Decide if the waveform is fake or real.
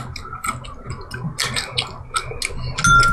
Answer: real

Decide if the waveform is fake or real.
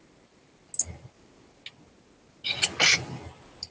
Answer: real